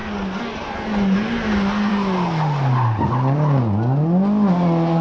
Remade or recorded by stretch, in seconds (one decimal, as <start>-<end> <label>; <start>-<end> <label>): 0.0-5.0 recorded